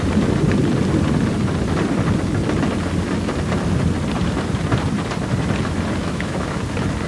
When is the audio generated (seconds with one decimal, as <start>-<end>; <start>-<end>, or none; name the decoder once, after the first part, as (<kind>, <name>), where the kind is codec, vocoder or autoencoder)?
6.0-6.6 (autoencoder, DAC-VAE)